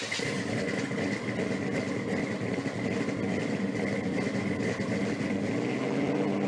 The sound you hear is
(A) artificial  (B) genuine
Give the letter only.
B